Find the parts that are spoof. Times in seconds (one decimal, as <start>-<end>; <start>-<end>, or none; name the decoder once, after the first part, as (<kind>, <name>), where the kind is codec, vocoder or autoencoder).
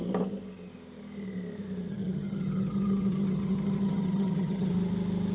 1.9-4.7 (vocoder, HiFi-GAN)